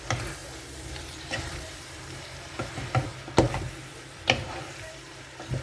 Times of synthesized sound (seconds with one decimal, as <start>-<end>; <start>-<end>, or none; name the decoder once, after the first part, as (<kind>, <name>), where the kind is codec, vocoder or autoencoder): 0.0-0.4 (vocoder, BigVGAN v2); 1.0-3.1; 3.9-5.6